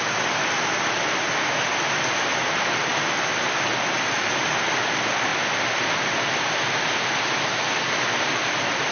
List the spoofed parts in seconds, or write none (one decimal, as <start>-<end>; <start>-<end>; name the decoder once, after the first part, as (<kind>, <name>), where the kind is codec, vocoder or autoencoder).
none